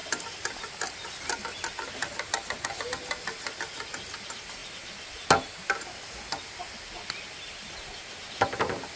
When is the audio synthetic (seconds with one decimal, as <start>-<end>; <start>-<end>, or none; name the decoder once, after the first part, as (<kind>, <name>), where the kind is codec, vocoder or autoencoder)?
none